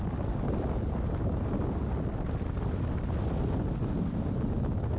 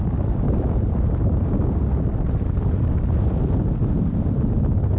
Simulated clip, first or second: second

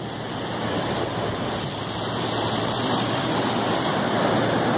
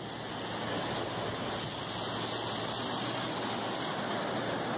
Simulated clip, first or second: first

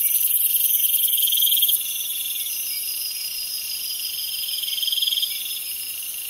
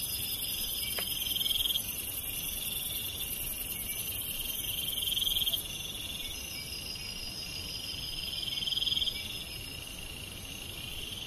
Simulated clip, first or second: first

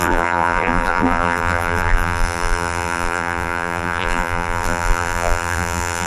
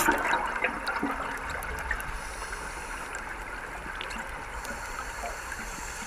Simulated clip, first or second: first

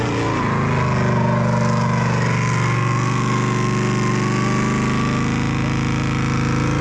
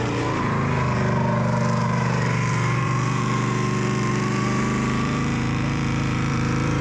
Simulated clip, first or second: second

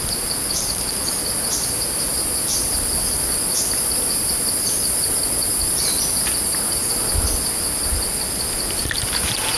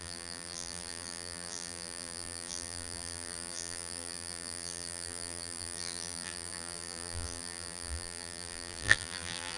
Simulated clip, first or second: second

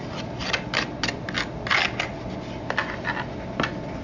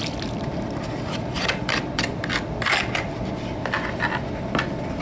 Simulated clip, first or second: second